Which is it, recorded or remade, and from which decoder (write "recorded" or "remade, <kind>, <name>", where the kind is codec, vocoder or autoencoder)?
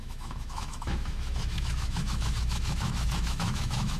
remade, autoencoder, DAC-VAE